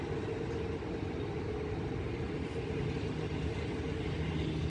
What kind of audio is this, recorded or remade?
recorded